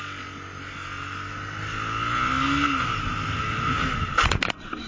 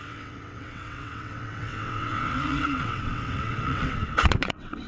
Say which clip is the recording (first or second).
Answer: first